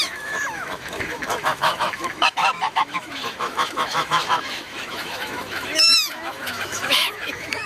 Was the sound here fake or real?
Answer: fake